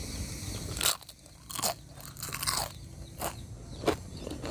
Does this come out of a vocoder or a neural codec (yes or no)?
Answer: no